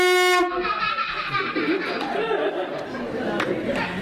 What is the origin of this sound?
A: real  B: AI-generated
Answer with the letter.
A